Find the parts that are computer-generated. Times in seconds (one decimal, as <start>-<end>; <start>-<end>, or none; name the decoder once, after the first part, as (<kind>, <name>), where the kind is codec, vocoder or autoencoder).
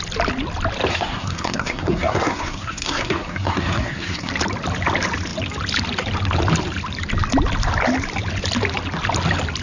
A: 0.9-4.3 (codec, SNAC)